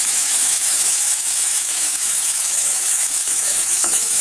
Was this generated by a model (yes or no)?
yes